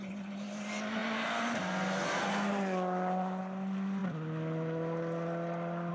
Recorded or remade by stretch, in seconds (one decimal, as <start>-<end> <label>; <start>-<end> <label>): 0.0-5.9 recorded